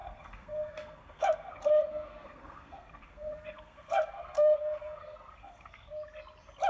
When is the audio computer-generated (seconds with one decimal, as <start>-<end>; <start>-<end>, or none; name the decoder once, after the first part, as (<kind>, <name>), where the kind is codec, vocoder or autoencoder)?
0.0-1.5 (codec, SNAC); 1.9-5.9